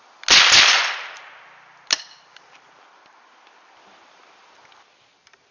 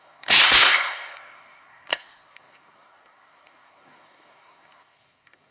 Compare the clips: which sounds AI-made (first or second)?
second